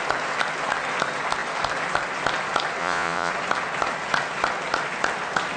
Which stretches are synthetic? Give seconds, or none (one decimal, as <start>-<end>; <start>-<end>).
2.8-3.3